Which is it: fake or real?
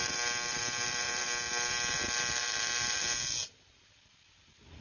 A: real